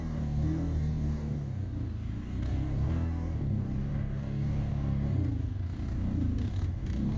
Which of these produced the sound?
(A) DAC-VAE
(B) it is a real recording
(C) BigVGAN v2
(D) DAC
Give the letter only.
D